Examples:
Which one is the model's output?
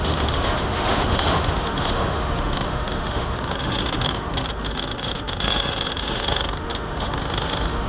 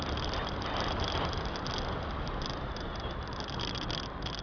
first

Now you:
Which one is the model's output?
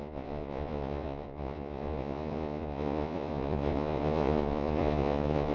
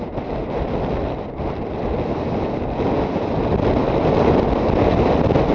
first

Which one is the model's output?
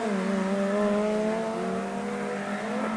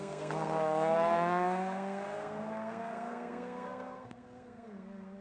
second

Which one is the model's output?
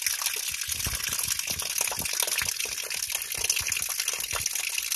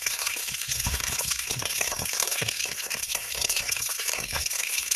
second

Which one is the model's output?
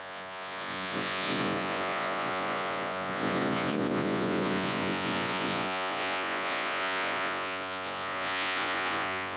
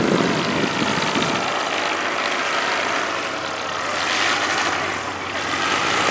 first